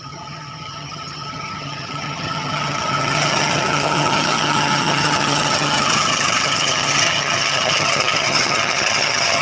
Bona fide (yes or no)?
no